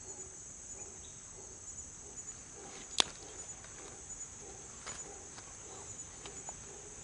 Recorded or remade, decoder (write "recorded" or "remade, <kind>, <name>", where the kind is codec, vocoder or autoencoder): recorded